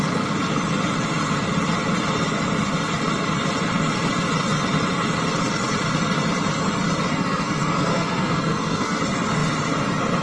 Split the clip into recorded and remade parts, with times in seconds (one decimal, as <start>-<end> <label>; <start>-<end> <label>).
0.0-7.1 recorded; 7.1-9.0 remade; 9.0-10.2 recorded